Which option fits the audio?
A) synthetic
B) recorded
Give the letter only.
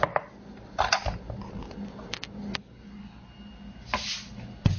B